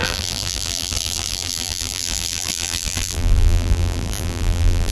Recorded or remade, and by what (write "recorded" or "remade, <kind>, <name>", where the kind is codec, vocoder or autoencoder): remade, vocoder, BigVGAN v2